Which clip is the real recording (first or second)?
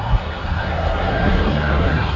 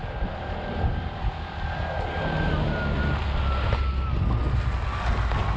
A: second